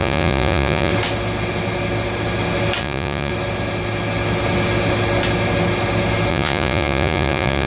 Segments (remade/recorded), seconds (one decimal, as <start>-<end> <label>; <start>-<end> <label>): 0.0-0.9 remade; 0.9-2.8 recorded; 2.8-3.3 remade; 3.3-6.3 recorded; 6.3-7.7 remade